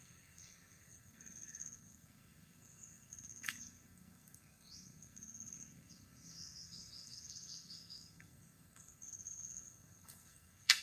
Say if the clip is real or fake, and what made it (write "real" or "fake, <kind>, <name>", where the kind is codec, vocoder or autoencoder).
fake, codec, SNAC